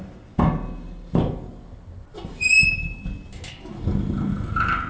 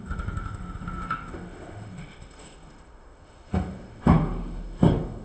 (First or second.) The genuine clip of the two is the first